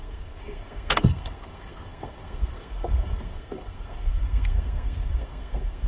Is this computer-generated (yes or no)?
yes